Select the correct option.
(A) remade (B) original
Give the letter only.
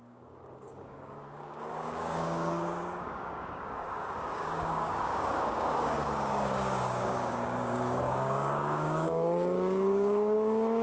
A